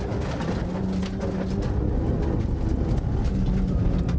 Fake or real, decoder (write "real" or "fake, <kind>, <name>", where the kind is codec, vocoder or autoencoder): real